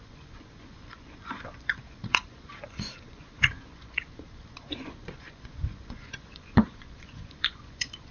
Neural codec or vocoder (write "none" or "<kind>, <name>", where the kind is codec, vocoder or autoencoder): vocoder, Vocos